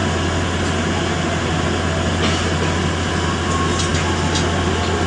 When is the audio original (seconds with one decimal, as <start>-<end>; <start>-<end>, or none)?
0.0-5.1